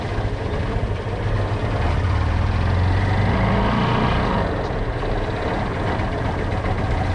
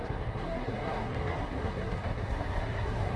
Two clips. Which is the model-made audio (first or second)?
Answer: second